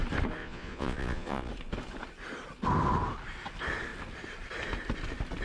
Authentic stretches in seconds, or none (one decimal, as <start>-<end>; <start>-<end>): 0.0-0.4; 1.5-5.4